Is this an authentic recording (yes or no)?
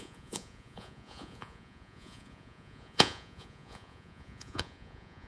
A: no